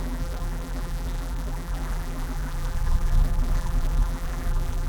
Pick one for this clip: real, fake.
fake